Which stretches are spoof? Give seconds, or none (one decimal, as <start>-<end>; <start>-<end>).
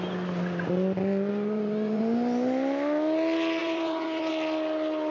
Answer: 1.3-2.0; 3.6-4.3